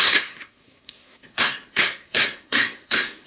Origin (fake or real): fake